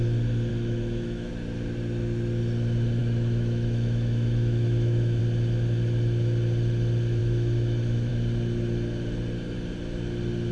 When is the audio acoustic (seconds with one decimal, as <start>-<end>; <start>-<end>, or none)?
0.0-0.5; 1.3-3.0; 5.2-7.2; 8.1-10.5